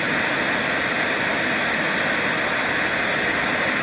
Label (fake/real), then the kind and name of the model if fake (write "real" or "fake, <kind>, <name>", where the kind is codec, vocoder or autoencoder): real